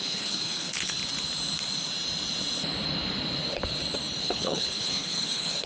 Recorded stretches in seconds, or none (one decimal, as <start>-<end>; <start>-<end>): 1.0-4.2